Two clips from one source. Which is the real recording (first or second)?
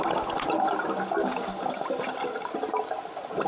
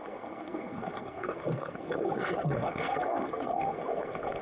first